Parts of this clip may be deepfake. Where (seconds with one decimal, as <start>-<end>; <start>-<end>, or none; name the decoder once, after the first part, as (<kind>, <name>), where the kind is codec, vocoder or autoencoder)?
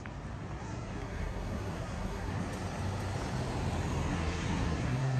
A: 0.6-2.4 (codec, SNAC); 4.1-5.2